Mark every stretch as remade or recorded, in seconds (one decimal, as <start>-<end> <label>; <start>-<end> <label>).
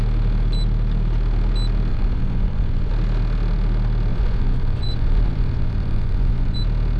0.0-1.9 recorded; 1.9-2.9 remade; 2.9-4.1 recorded; 4.1-6.6 remade; 6.6-7.0 recorded